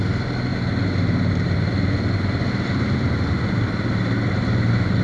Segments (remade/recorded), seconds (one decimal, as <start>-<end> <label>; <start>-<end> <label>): 0.0-5.0 recorded